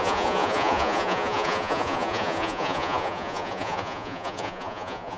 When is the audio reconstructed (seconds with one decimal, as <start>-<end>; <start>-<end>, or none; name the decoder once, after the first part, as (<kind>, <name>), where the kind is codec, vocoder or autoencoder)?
0.0-5.2 (vocoder, Vocos)